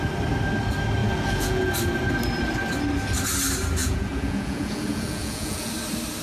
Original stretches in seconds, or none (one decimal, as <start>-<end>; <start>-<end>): 0.0-1.0; 1.7-3.8; 5.7-6.2